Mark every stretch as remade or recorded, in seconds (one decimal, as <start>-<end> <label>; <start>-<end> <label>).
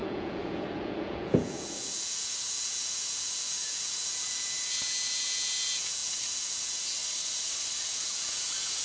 0.0-7.0 remade; 7.0-7.9 recorded; 7.9-8.8 remade